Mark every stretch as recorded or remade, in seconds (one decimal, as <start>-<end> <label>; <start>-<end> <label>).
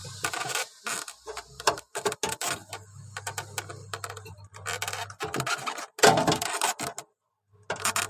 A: 0.0-0.8 remade; 0.8-1.3 recorded; 1.3-1.9 remade; 1.9-8.1 recorded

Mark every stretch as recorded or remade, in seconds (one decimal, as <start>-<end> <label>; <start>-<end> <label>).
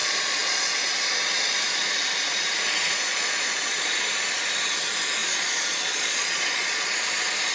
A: 0.0-0.7 remade; 0.7-3.1 recorded; 3.1-3.9 remade; 3.9-5.2 recorded; 5.2-6.9 remade; 6.9-7.5 recorded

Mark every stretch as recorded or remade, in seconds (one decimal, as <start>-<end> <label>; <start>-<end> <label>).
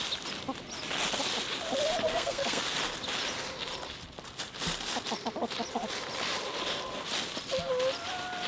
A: 0.0-2.1 recorded; 2.1-2.6 remade; 2.6-8.5 recorded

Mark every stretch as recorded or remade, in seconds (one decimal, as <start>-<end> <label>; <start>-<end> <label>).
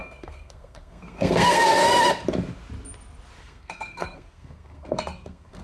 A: 0.0-2.0 remade; 2.0-3.4 recorded; 3.4-5.6 remade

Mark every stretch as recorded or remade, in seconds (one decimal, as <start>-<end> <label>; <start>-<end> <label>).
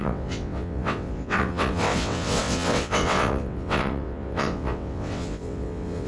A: 0.0-6.1 remade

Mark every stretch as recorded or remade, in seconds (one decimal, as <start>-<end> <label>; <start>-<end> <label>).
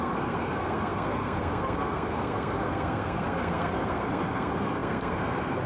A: 0.0-5.7 remade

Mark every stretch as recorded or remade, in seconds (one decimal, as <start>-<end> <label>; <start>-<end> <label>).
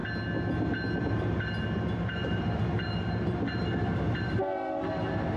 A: 0.0-1.0 recorded; 1.0-5.4 remade